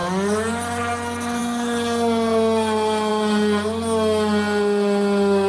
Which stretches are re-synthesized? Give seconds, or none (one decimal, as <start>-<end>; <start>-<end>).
none